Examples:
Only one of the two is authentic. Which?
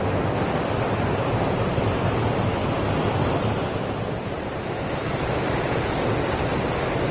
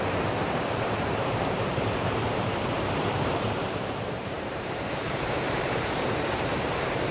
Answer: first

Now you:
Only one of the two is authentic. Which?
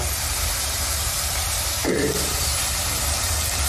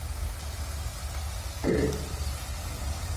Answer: second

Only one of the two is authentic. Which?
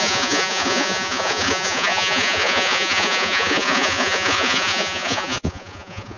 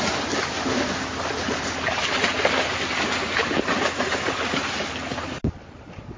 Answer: second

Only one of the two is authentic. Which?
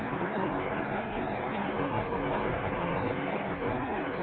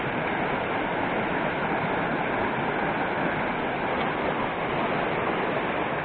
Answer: second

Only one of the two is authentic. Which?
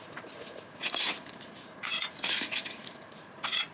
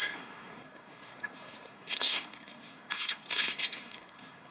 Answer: first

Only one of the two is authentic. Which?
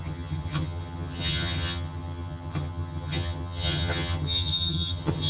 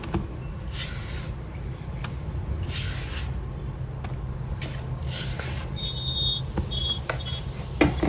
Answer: second